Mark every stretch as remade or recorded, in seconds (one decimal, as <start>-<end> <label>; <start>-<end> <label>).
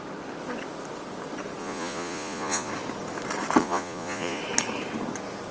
0.0-1.6 recorded; 1.6-2.7 remade; 2.7-3.6 recorded; 3.6-4.4 remade; 4.4-5.5 recorded